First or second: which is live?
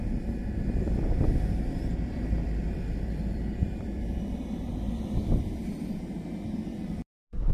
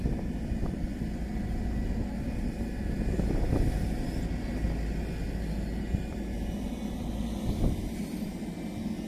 second